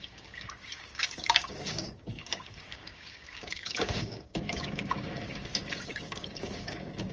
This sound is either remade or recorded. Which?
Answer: remade